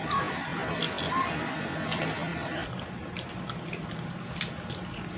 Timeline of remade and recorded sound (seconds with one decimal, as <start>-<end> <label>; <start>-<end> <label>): 0.0-5.2 recorded